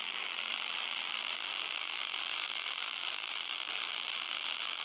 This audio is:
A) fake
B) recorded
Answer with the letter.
A